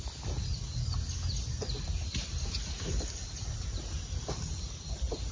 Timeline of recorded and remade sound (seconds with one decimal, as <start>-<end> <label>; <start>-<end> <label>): 0.0-5.3 recorded